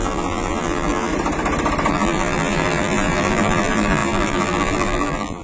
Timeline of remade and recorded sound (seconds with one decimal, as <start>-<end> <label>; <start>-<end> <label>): 0.0-1.1 remade; 1.1-1.9 recorded; 1.9-5.4 remade